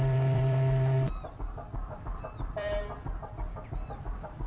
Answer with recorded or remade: remade